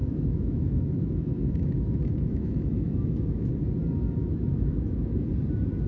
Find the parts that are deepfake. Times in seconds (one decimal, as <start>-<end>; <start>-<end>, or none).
0.0-3.5; 4.2-5.3